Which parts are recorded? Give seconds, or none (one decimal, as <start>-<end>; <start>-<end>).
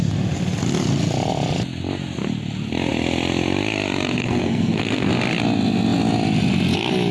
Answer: 0.0-4.2; 5.1-7.1